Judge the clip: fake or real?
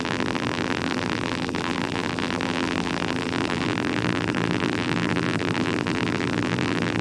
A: fake